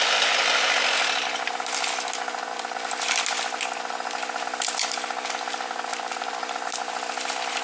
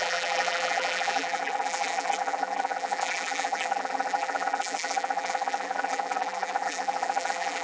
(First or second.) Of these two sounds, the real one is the first